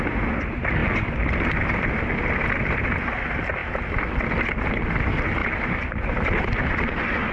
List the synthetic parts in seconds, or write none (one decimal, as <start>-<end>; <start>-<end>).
none